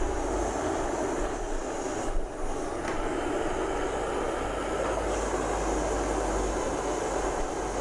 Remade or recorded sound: recorded